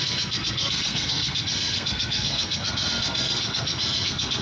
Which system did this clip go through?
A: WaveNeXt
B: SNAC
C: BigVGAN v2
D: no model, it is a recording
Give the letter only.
B